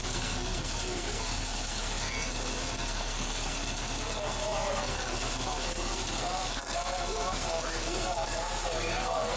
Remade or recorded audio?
remade